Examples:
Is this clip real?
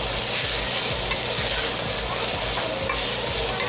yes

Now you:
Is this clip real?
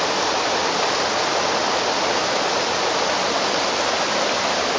yes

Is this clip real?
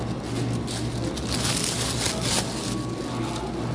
yes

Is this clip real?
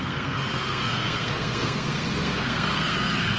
no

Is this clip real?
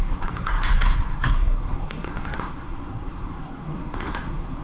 no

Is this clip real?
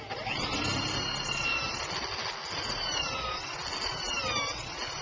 yes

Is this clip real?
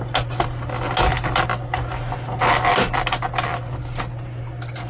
yes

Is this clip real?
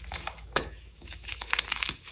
no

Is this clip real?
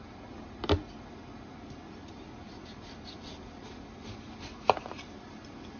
yes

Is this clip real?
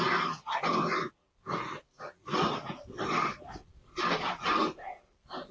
yes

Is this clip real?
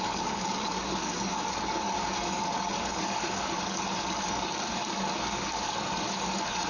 no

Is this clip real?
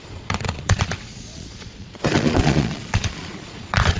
no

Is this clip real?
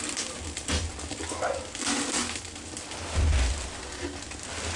yes